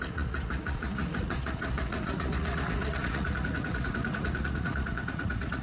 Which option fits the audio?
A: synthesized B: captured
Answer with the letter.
A